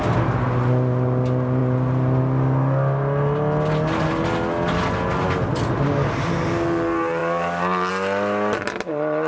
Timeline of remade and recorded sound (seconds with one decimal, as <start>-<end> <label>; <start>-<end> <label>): 0.0-9.3 recorded